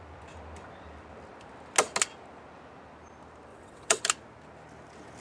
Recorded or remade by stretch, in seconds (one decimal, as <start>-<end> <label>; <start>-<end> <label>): 0.0-3.5 recorded; 3.5-4.0 remade; 4.0-5.2 recorded